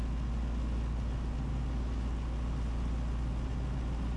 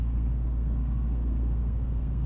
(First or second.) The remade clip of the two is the second